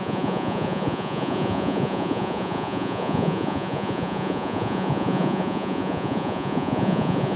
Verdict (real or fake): fake